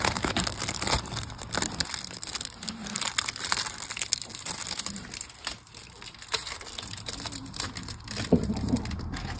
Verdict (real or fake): fake